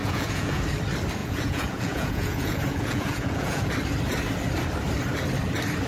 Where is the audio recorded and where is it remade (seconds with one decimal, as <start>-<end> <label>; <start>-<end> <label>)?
0.0-0.6 remade; 0.6-1.2 recorded; 1.2-3.7 remade; 3.7-5.9 recorded